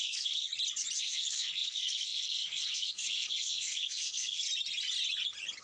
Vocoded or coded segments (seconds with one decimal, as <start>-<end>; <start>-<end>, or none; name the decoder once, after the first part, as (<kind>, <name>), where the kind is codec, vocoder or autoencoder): 0.0-0.5 (codec, SNAC); 1.0-4.4